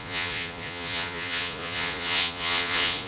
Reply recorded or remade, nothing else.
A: remade